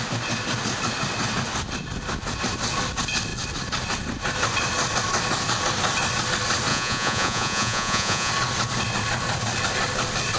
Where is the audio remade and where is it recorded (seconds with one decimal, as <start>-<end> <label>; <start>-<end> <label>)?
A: 0.0-6.7 recorded; 6.7-8.3 remade; 8.3-10.4 recorded